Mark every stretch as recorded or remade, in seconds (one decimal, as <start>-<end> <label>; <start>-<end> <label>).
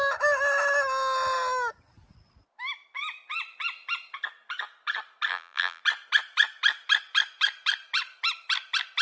0.0-5.3 recorded; 5.3-5.8 remade; 5.8-9.0 recorded